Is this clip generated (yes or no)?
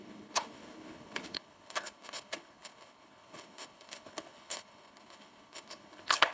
yes